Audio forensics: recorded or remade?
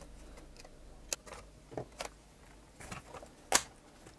recorded